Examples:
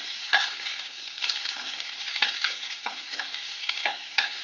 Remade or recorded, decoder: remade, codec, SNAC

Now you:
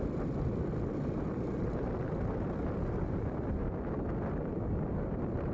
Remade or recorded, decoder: recorded